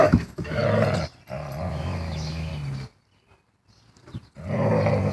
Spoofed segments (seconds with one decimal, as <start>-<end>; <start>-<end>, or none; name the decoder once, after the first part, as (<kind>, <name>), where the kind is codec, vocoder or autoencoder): 0.0-0.6 (autoencoder, DAC-VAE); 1.7-2.5